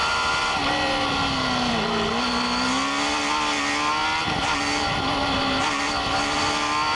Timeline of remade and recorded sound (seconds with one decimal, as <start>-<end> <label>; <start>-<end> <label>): 0.0-6.9 recorded